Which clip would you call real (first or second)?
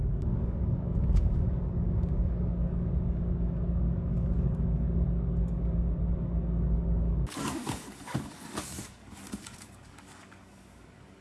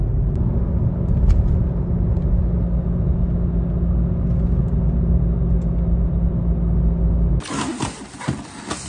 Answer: second